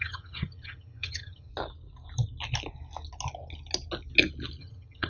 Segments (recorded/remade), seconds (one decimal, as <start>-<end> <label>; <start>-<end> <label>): 0.0-1.5 remade; 1.5-4.6 recorded; 4.6-5.1 remade